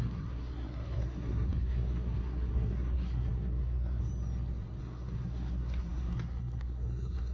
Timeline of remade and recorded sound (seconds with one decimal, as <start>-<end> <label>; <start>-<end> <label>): 0.0-4.1 remade; 4.1-4.8 recorded; 4.8-7.3 remade